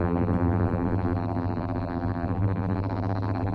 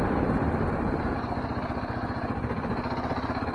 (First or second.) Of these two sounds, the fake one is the first